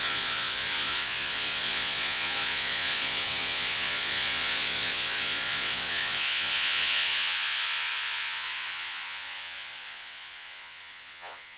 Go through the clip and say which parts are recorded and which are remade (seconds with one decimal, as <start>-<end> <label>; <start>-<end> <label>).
0.0-11.6 remade